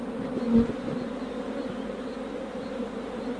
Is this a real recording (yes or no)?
yes